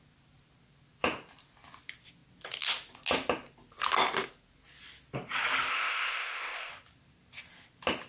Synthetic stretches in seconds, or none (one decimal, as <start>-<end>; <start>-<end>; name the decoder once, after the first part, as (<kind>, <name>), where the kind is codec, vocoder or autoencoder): 5.7-6.7 (codec, ZipCodec)